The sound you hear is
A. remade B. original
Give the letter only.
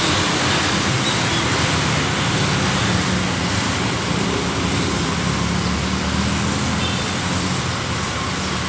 B